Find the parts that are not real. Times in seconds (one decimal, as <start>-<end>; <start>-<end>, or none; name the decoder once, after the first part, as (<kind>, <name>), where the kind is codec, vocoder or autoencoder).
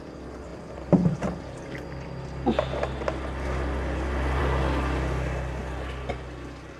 none